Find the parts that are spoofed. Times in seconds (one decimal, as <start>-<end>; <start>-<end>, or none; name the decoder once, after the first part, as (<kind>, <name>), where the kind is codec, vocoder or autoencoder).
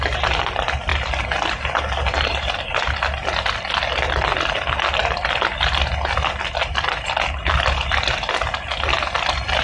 none